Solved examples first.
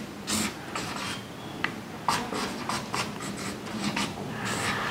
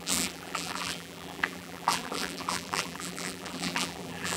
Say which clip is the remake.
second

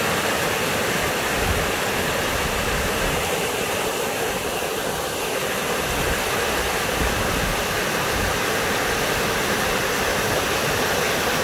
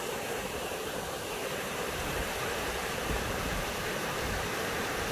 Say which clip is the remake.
second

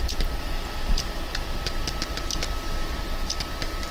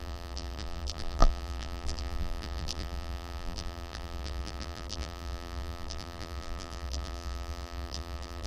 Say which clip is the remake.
second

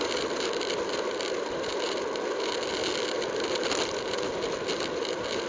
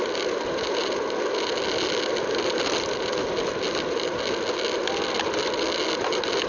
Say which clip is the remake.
first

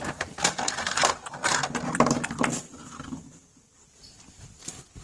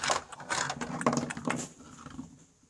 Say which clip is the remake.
first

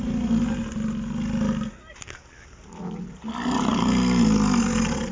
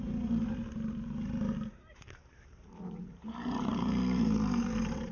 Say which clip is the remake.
second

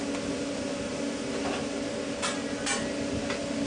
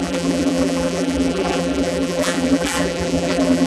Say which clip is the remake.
second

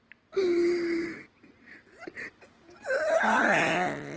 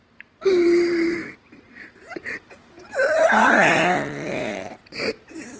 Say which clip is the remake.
second